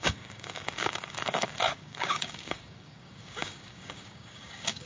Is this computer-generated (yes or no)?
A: yes